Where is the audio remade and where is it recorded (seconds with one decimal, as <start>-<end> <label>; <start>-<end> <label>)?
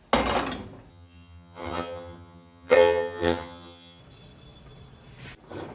0.0-0.9 recorded; 0.9-4.0 remade; 4.0-5.7 recorded